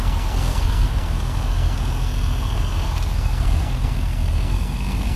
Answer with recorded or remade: remade